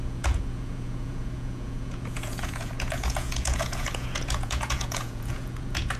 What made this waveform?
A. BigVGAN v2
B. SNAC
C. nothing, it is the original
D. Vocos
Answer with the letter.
D